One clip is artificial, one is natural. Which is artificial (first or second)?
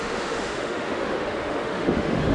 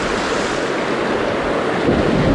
first